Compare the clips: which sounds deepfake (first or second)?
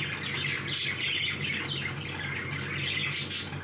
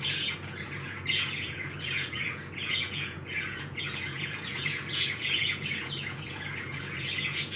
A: second